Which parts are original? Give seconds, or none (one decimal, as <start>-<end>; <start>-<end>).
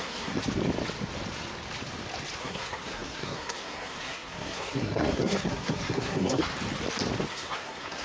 0.4-2.4; 6.5-7.3